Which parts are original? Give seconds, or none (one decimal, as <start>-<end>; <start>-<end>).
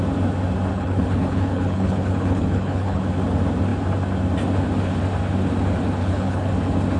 0.0-0.7; 3.0-6.0; 6.5-7.0